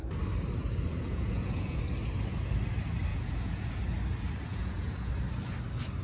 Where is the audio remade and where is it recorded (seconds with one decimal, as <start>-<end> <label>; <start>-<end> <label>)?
0.0-0.9 recorded; 0.9-1.8 remade; 1.8-3.1 recorded; 3.1-3.8 remade; 3.8-4.5 recorded; 4.5-5.1 remade; 5.1-6.0 recorded